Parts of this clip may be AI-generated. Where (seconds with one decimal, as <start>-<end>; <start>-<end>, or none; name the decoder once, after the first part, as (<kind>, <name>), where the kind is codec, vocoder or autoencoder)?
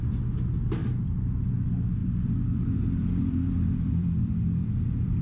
0.8-1.5 (vocoder, BigVGAN v2); 2.0-2.6; 3.0-5.2